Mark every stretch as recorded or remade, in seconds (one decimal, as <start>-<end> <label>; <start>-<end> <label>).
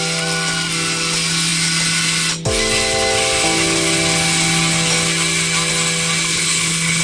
0.0-6.3 recorded; 6.3-7.0 remade